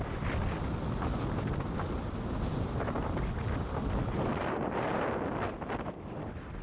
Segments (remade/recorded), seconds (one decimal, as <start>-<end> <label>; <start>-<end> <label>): 0.0-2.0 recorded; 2.0-3.2 remade; 3.2-4.3 recorded; 4.3-5.0 remade; 5.0-6.6 recorded